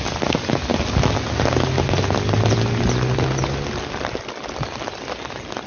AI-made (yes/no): no